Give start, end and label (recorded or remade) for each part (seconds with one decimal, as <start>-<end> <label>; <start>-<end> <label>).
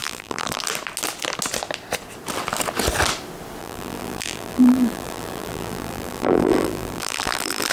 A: 0.0-0.6 remade; 0.6-3.6 recorded; 3.6-7.7 remade